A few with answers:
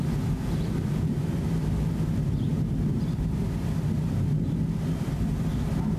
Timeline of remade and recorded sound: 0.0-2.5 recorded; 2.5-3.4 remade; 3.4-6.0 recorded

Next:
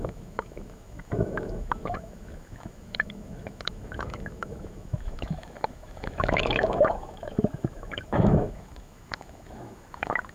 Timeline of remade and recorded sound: 0.0-10.3 remade

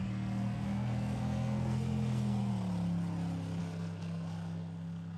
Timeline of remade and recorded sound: 0.0-2.5 remade; 2.5-3.6 recorded; 3.6-5.2 remade

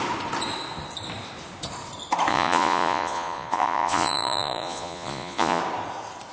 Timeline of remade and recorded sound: 0.0-2.3 recorded; 2.3-5.6 remade; 5.6-6.3 recorded

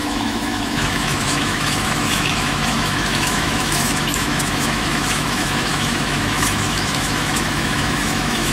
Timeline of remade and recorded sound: 0.0-8.5 remade